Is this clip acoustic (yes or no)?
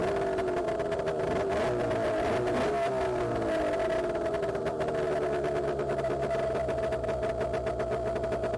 yes